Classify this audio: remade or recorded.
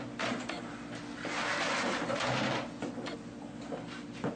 recorded